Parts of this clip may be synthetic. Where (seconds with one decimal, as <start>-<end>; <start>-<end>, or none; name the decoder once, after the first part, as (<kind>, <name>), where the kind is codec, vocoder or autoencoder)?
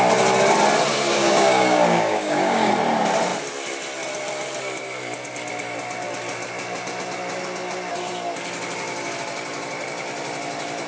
0.9-2.7 (codec, DAC)